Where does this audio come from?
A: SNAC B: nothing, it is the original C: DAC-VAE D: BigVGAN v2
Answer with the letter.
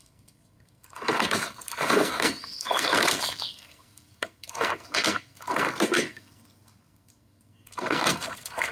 A